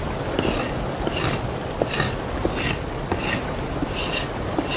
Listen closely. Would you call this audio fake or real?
real